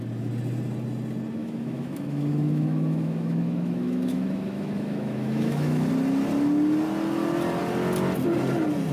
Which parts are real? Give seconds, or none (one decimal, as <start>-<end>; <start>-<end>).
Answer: 0.0-1.4; 5.9-8.9